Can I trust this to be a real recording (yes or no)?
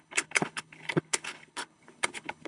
no